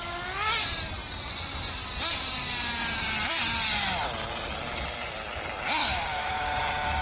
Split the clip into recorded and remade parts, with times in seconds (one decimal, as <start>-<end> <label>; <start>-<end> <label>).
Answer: 0.0-5.8 recorded; 5.8-6.6 remade; 6.6-7.0 recorded